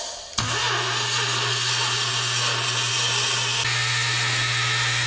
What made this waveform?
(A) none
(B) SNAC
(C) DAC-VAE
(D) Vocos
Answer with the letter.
A